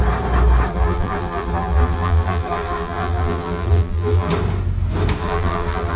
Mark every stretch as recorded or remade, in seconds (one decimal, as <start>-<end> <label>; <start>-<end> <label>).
0.0-0.7 recorded; 0.7-4.3 remade; 4.3-5.2 recorded; 5.2-6.0 remade